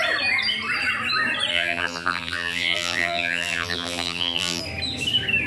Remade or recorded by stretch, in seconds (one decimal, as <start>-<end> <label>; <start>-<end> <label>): 0.0-1.5 recorded; 1.5-4.6 remade; 4.6-5.5 recorded